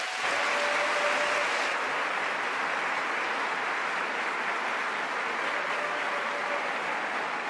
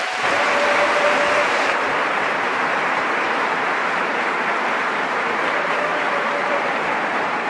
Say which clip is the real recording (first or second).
first